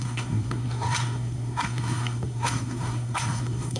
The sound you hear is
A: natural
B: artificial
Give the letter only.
B